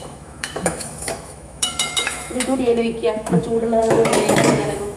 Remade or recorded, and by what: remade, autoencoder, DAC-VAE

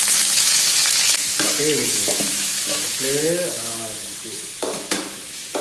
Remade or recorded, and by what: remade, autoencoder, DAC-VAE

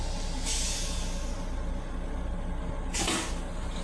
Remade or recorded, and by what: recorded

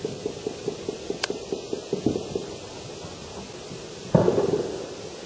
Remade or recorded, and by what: recorded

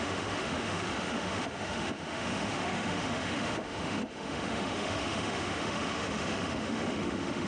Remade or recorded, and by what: remade, autoencoder, DAC-VAE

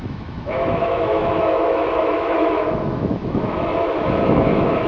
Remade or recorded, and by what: remade, autoencoder, DAC-VAE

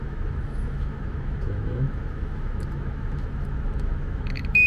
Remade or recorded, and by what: remade, autoencoder, DAC-VAE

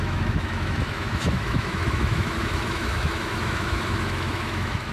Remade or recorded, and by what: remade, autoencoder, DAC-VAE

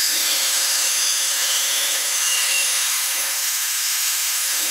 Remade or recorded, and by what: remade, autoencoder, DAC-VAE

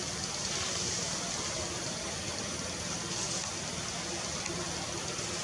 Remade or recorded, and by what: recorded